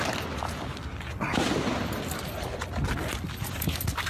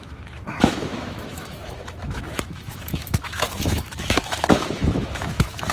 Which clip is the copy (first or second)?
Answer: second